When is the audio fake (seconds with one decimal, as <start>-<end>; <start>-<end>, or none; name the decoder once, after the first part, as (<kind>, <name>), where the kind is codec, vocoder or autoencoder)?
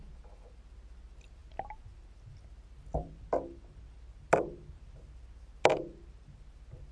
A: none